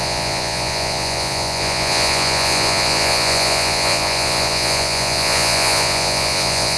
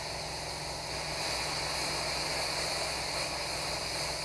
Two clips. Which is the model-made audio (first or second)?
first